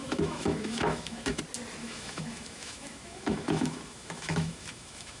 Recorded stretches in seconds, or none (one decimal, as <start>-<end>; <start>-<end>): 1.4-1.8